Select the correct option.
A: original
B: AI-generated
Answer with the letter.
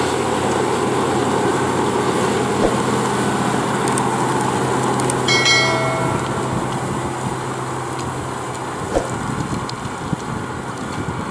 A